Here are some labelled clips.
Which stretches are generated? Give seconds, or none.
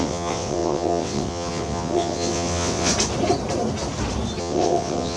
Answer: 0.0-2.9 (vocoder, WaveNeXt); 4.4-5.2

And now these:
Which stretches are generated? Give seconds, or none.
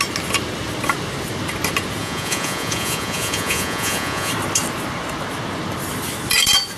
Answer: 2.0-4.3 (vocoder, Vocos)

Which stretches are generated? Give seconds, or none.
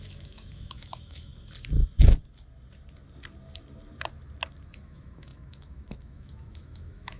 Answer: 0.0-1.3 (autoencoder, DAC-VAE); 4.8-7.2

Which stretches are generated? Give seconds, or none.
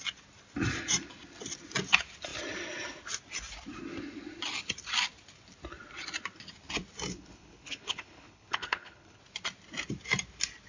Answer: 7.1-9.2 (codec, HILCodec)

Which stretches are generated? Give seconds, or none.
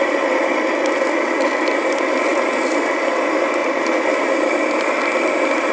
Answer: 2.3-3.0 (vocoder, BigVGAN v2)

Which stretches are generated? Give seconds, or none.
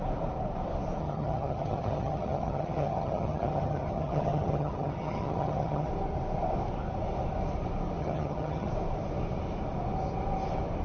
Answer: 1.0-5.9 (vocoder, HiFi-GAN); 8.0-8.7